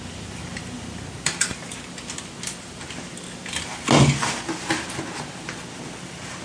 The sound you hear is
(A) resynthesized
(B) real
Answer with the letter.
B